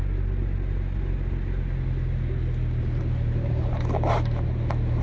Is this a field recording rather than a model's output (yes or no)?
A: yes